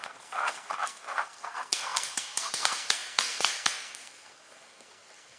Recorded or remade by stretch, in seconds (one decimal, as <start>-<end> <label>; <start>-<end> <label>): 0.0-5.4 remade